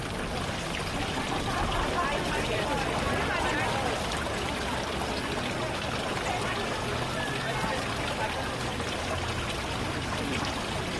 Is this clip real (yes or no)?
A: yes